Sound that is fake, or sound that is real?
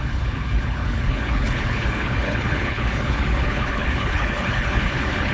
fake